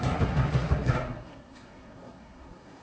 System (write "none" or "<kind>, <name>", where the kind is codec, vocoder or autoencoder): codec, SNAC